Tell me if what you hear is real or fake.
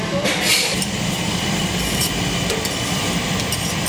real